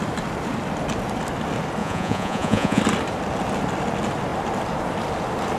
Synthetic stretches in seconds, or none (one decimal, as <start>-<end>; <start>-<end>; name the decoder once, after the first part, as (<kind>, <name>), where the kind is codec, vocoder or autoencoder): 1.8-2.8 (vocoder, Vocos)